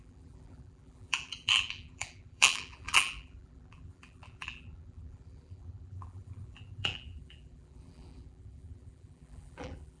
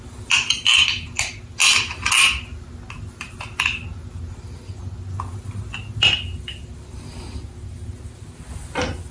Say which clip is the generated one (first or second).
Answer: first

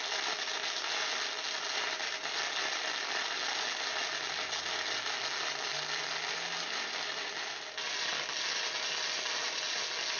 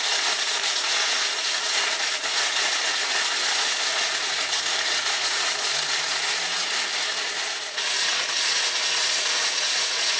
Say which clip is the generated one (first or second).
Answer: second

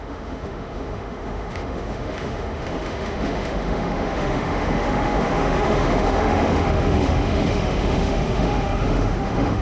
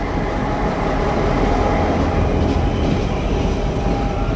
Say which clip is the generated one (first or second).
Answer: first